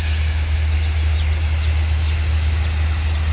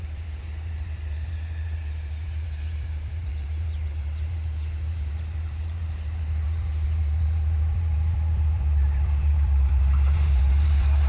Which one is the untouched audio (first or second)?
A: first